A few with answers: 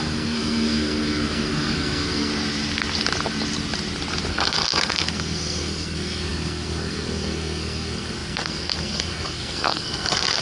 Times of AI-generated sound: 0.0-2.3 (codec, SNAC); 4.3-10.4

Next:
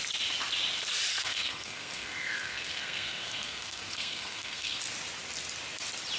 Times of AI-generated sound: 1.1-4.8 (codec, SNAC)

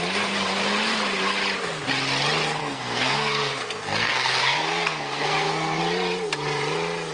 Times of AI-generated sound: 2.6-5.8 (codec, SNAC)